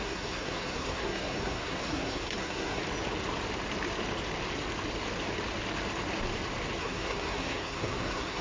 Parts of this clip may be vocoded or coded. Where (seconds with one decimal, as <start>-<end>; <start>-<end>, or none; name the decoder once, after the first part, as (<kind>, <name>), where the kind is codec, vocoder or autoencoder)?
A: 0.0-2.8 (codec, SNAC); 6.8-8.4